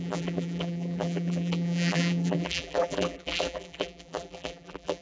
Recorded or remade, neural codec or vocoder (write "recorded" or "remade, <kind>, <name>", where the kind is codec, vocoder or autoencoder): remade, vocoder, BigVGAN v2